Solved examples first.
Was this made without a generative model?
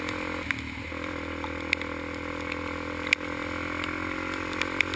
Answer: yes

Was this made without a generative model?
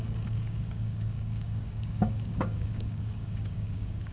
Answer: no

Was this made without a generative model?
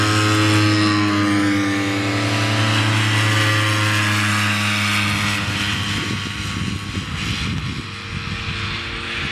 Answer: yes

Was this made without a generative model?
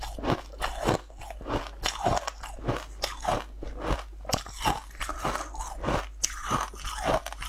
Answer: yes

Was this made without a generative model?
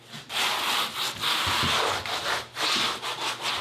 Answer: yes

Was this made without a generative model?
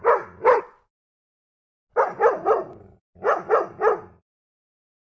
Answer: yes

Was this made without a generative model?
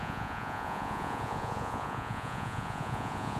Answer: no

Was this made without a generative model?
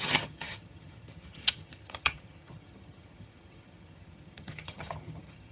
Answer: no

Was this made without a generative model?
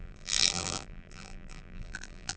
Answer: no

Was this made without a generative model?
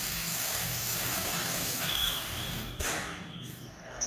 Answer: no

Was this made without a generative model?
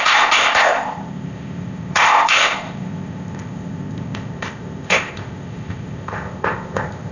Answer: no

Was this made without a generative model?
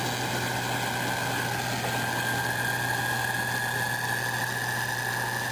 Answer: yes